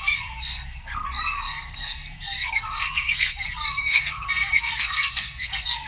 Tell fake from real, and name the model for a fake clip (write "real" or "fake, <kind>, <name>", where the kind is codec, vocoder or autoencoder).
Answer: fake, codec, SNAC